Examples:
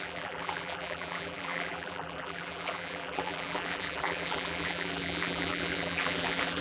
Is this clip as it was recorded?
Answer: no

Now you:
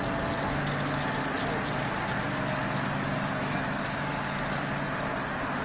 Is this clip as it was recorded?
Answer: yes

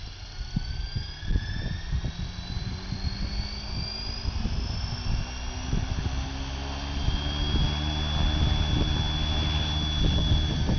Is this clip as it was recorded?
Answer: yes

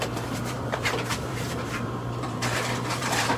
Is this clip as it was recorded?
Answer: no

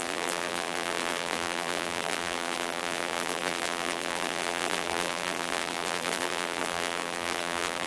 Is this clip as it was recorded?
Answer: no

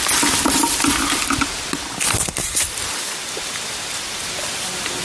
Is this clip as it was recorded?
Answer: yes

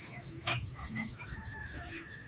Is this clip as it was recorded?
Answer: no